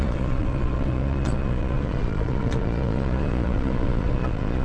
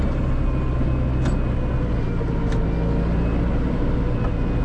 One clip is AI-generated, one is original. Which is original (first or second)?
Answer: second